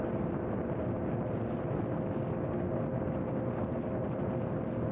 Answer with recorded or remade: recorded